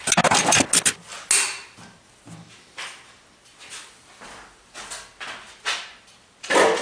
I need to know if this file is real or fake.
real